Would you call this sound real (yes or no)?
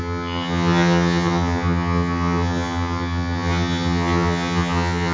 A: no